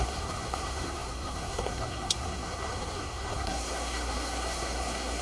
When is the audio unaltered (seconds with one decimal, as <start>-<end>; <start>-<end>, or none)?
none